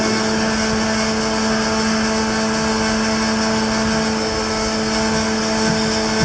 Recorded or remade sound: recorded